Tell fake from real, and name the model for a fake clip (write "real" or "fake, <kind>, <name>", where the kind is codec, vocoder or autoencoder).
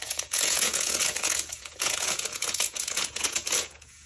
fake, vocoder, Vocos